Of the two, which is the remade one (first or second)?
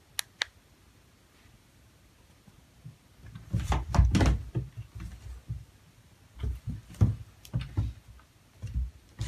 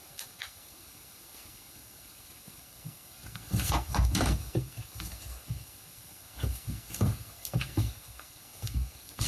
second